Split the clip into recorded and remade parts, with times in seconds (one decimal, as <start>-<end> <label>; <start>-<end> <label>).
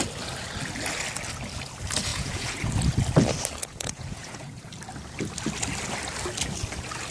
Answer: 0.0-2.1 recorded; 2.1-2.7 remade; 2.7-3.6 recorded; 3.6-4.7 remade; 4.7-7.1 recorded